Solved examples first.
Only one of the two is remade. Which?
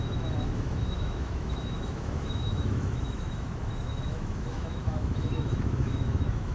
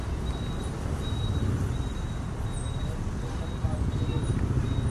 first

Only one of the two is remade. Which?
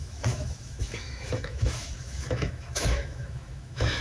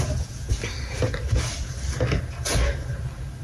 first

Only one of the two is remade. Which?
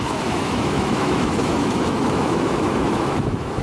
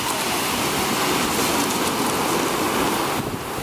first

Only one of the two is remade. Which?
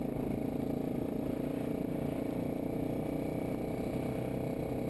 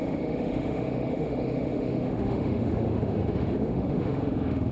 second